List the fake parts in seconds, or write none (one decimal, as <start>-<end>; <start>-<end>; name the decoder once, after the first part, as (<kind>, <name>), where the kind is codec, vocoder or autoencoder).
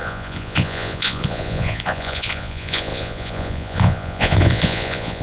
0.0-5.2 (vocoder, Vocos)